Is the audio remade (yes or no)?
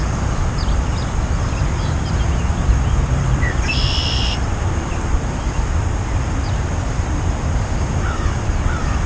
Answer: yes